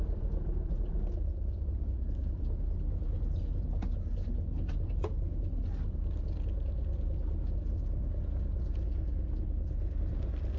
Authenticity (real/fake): real